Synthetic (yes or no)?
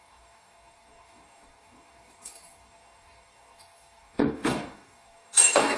yes